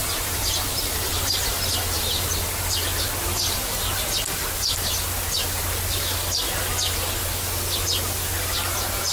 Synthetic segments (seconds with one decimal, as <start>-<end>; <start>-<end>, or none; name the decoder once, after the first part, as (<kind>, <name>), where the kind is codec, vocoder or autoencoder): 0.0-2.3 (vocoder, BigVGAN v2)